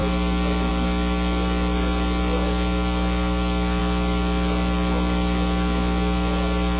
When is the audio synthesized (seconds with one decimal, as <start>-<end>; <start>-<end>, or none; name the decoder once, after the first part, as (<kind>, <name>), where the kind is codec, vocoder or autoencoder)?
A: none